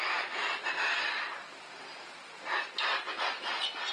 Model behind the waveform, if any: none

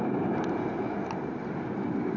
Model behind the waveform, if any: vocoder, BigVGAN v2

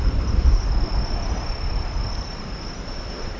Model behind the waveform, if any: vocoder, BigVGAN v2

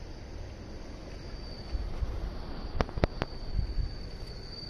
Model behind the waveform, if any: none